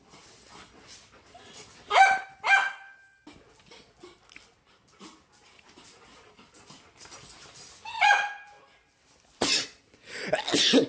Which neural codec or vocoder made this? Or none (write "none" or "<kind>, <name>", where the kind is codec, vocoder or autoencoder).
none